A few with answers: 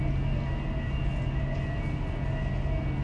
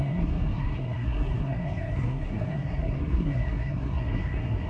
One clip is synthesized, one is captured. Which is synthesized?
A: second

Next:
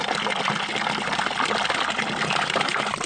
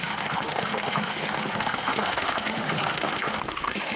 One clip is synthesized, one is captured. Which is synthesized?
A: second